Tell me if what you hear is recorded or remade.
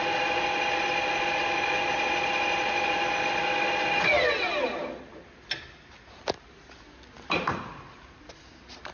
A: recorded